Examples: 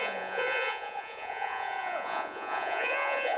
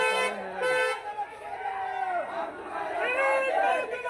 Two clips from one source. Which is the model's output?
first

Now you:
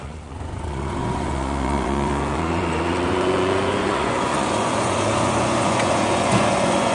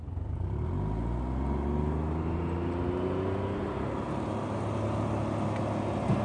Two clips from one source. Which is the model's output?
first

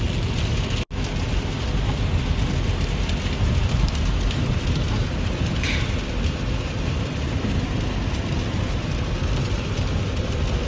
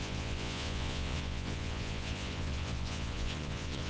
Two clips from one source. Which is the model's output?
second